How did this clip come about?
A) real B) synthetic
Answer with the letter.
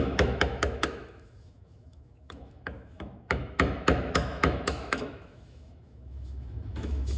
B